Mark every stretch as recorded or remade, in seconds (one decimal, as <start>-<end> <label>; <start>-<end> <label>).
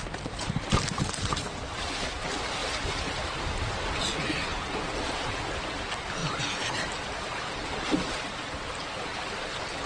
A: 0.0-9.9 recorded